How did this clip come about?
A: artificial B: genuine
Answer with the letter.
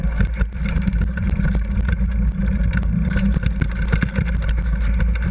B